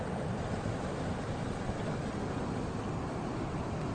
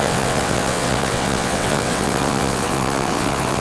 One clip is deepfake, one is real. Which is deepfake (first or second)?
second